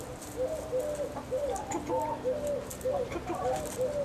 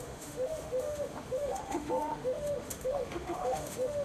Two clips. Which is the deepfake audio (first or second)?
second